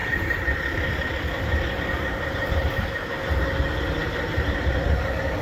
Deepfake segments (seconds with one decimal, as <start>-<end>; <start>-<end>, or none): none